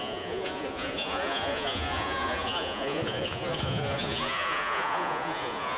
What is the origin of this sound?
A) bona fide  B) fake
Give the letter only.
B